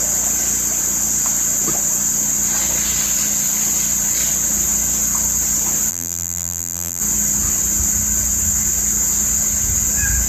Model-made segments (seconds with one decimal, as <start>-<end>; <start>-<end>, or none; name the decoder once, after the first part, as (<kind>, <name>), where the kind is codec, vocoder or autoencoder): 5.9-7.0 (vocoder, BigVGAN v2)